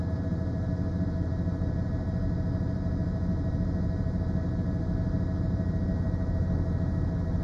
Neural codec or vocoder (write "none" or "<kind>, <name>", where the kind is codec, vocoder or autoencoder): none